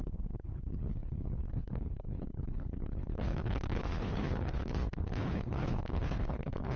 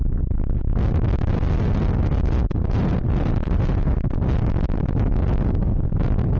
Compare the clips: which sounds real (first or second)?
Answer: second